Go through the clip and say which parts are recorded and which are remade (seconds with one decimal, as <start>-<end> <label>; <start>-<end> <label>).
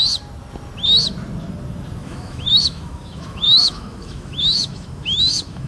0.0-2.0 recorded; 2.0-5.7 remade